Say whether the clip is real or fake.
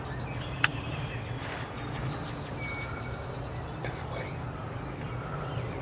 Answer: real